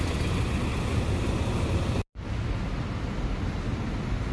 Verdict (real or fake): real